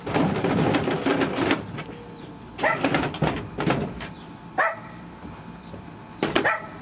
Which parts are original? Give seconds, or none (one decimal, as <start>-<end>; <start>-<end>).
none

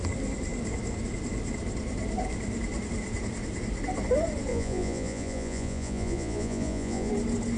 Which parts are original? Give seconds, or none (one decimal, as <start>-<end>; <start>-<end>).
0.0-4.5; 7.1-7.6

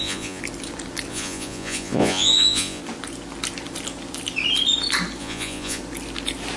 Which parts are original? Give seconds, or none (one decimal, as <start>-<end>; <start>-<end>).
0.4-1.1; 2.8-5.2; 5.8-6.6

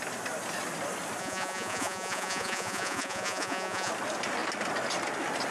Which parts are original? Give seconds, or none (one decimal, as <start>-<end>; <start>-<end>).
0.0-1.2; 3.9-5.5

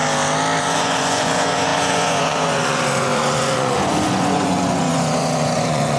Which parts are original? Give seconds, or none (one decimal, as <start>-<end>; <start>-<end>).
0.0-0.6

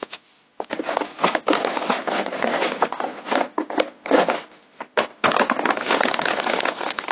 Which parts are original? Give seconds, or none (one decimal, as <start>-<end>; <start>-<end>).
0.0-7.1